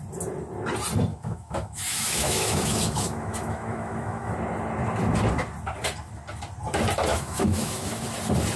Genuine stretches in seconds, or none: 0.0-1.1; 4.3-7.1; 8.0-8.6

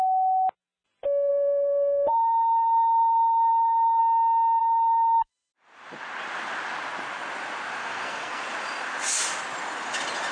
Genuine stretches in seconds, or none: 0.0-1.3; 4.0-4.6; 5.3-7.8; 8.4-10.3